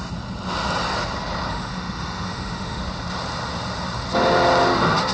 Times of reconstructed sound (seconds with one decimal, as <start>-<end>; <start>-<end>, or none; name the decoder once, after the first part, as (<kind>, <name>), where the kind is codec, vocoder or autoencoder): 1.5-2.8 (autoencoder, DAC-VAE)